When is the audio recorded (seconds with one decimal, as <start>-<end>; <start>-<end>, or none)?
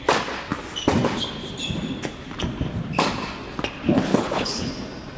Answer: 0.0-4.1; 4.7-5.2